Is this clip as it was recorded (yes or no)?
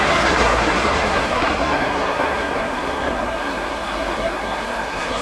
no